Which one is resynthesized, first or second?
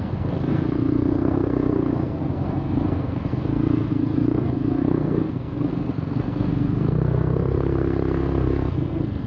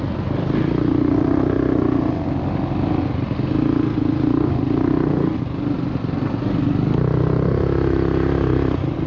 first